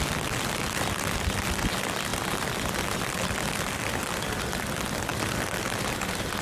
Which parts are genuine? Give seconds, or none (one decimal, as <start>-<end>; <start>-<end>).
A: 0.0-2.1; 4.6-5.1